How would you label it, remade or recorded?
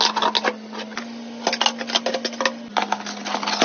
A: recorded